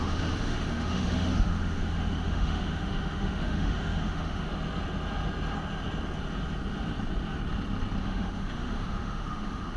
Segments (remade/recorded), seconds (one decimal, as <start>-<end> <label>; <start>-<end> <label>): 0.0-4.5 remade; 4.5-8.0 recorded; 8.0-9.8 remade